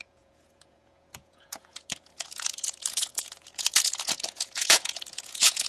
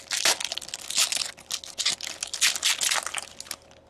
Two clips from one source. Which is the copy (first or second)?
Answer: first